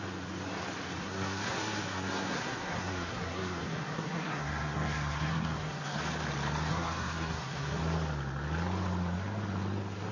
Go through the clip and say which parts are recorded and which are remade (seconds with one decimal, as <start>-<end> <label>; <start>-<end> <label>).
0.0-1.0 recorded; 1.0-6.0 remade; 6.0-6.7 recorded; 6.7-7.8 remade; 7.8-10.1 recorded